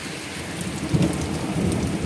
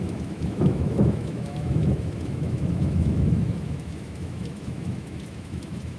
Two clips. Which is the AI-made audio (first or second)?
second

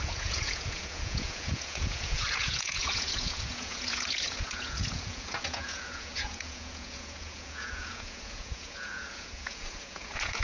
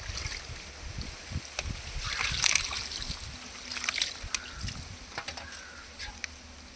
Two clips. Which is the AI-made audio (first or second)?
first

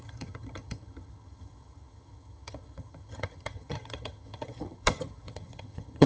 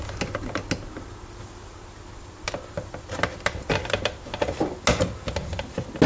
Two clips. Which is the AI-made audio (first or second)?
first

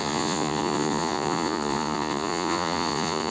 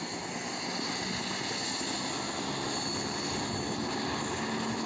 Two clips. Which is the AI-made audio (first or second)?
first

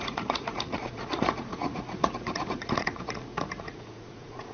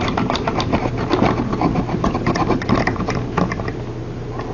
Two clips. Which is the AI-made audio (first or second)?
first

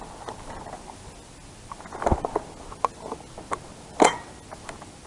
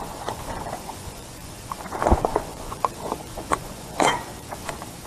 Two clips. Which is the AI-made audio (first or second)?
second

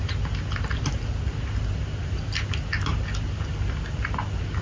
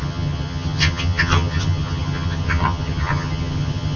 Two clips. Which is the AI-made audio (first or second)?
second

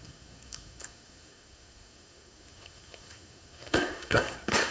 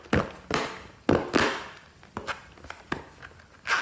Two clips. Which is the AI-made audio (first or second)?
first